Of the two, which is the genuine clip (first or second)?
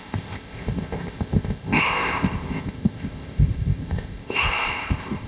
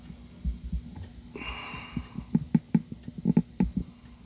second